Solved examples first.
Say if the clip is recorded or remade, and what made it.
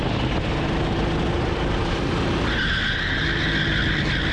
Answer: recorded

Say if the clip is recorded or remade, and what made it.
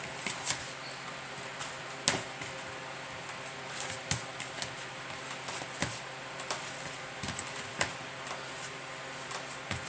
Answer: recorded